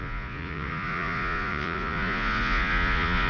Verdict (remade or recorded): remade